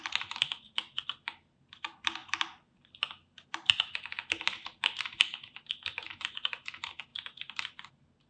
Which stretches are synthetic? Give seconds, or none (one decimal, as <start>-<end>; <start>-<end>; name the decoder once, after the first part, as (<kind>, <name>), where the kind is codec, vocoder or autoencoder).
none

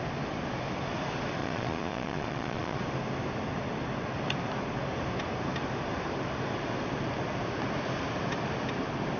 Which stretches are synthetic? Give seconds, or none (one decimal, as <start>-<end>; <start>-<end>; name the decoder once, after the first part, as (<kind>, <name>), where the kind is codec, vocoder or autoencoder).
1.4-2.8 (vocoder, Vocos)

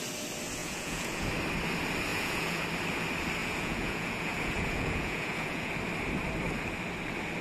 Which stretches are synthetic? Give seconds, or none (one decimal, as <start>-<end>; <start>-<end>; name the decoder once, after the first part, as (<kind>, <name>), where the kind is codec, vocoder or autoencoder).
0.6-1.3 (vocoder, Vocos); 2.1-2.6; 3.4-5.7

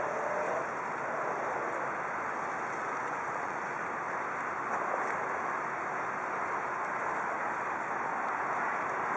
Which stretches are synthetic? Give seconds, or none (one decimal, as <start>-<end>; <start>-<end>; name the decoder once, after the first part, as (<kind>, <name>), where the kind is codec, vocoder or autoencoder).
3.0-3.8 (vocoder, Vocos)

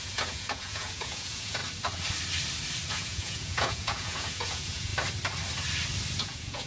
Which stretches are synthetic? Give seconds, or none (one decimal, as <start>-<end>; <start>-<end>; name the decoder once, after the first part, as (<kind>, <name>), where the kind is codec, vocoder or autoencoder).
0.0-1.6 (vocoder, Vocos); 2.9-4.9; 6.2-6.7

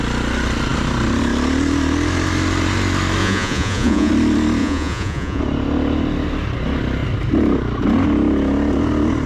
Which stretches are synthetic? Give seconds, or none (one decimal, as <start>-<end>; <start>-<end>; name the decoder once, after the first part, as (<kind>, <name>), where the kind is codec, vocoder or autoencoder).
3.2-4.1 (vocoder, Vocos); 4.6-5.4

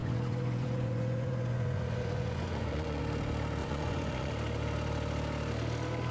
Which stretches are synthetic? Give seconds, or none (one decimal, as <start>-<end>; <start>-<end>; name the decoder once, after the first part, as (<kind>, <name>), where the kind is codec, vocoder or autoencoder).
0.0-3.0 (vocoder, Vocos); 3.6-4.3